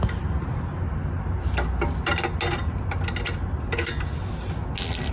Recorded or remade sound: recorded